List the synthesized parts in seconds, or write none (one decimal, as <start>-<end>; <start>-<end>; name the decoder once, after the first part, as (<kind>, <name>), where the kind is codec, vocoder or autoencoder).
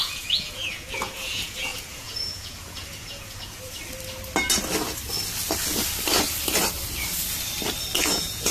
0.0-3.8 (vocoder, Vocos); 8.0-8.5